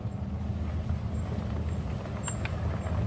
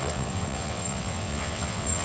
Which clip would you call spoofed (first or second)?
second